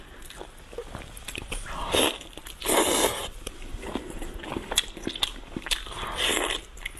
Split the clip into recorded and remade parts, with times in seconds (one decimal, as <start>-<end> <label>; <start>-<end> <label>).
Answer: 0.0-0.8 recorded; 0.8-1.4 remade; 1.4-3.2 recorded; 3.2-6.0 remade; 6.0-7.0 recorded